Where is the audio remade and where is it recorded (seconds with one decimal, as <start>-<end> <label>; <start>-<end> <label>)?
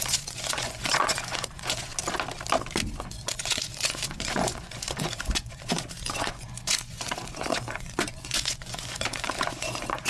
0.0-1.9 remade; 1.9-3.0 recorded; 3.0-10.1 remade